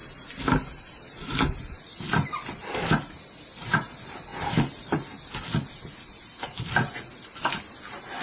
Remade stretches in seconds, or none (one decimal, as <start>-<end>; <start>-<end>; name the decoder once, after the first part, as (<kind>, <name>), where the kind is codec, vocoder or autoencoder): none